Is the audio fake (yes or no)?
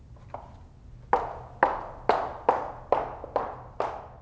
no